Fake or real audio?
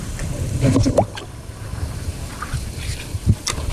real